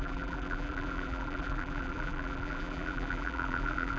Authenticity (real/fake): fake